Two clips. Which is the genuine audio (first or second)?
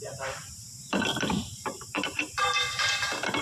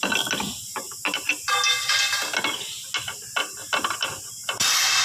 second